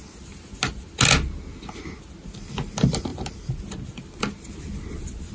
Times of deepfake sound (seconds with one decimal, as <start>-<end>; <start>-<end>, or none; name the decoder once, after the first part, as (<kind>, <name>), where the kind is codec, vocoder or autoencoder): none